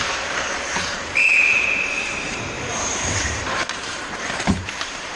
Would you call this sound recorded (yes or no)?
no